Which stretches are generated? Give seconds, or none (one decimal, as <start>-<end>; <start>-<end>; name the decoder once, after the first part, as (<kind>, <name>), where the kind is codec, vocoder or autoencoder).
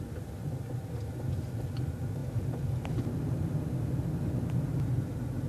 none